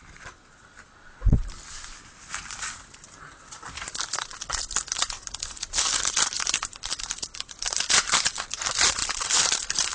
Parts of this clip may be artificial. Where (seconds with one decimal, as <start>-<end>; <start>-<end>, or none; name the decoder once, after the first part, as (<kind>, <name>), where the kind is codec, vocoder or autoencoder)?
4.3-7.9 (vocoder, BigVGAN v2); 9.0-9.5